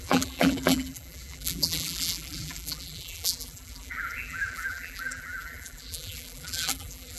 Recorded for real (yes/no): no